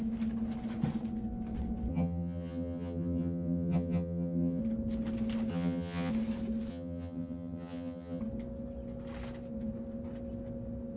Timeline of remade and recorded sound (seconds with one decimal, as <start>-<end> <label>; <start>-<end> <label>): 0.0-1.9 recorded; 1.9-4.6 remade; 4.6-5.5 recorded; 5.5-6.1 remade; 6.1-6.7 recorded; 6.7-8.2 remade; 8.2-11.0 recorded